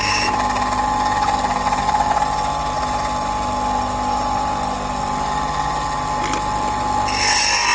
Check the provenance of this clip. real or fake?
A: real